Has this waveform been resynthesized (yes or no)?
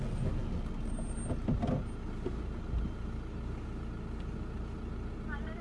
no